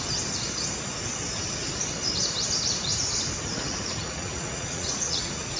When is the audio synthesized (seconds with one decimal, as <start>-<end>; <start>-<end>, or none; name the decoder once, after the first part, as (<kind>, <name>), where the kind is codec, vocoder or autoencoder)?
3.7-5.6 (vocoder, Vocos)